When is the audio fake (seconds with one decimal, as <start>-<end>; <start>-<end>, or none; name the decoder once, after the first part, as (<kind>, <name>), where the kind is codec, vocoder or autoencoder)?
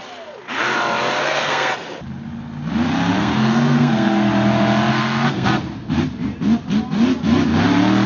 1.2-1.7 (codec, SNAC); 3.2-4.3; 4.9-5.6